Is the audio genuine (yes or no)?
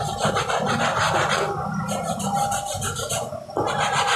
yes